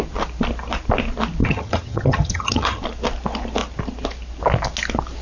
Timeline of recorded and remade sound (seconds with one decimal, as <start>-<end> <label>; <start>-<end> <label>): 0.0-1.4 recorded; 1.4-2.8 remade; 2.8-5.2 recorded